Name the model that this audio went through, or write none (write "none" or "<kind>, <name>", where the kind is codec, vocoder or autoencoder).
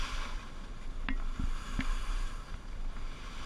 none